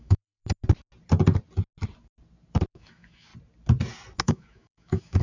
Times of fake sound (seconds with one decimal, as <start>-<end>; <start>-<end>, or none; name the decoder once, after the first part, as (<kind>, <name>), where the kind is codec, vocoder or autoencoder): 0.0-0.4 (autoencoder, DAC-VAE); 2.7-3.3; 4.2-5.2